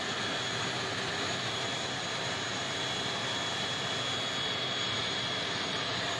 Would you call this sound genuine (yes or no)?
yes